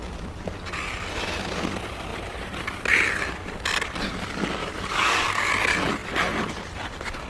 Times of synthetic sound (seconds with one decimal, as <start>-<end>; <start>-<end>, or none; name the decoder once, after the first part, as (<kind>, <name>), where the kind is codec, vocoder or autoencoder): 4.6-5.5 (codec, DAC)